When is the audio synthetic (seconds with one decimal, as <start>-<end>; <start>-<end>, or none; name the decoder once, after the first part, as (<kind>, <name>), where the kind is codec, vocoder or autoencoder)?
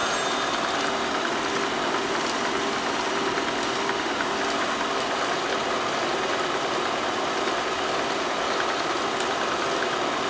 none